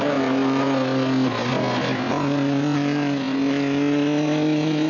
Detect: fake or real real